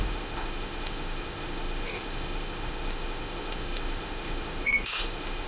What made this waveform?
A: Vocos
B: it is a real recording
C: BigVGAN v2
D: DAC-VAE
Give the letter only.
D